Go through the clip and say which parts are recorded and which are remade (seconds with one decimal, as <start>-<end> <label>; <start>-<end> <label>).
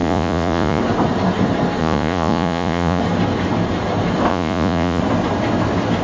0.0-0.8 remade; 0.8-1.8 recorded; 1.8-3.0 remade; 3.0-4.3 recorded; 4.3-5.0 remade; 5.0-6.0 recorded